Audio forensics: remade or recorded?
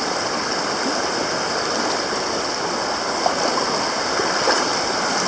recorded